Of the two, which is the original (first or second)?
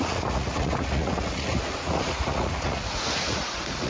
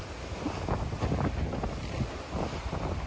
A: second